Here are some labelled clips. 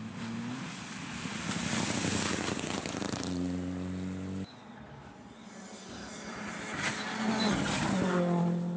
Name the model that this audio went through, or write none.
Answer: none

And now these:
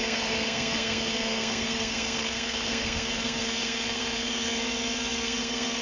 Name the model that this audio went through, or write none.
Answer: codec, SNAC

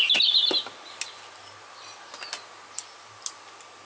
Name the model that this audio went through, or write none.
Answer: none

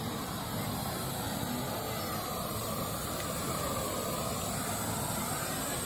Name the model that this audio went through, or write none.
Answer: none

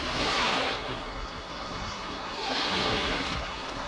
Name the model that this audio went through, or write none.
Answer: codec, SNAC